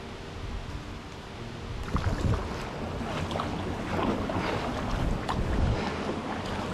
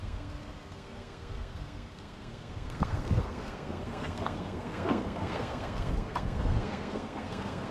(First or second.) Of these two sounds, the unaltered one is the first